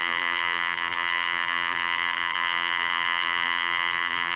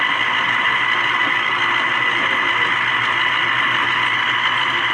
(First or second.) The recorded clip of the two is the second